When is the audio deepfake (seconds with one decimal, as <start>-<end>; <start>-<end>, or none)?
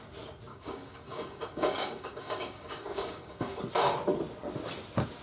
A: 0.5-3.6